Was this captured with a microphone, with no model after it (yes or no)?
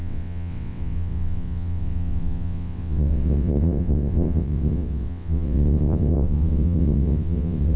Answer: no